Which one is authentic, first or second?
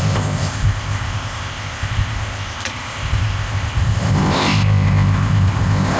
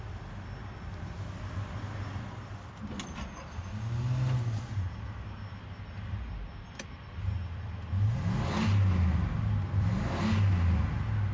second